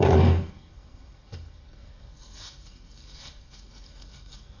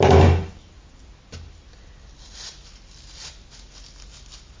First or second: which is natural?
second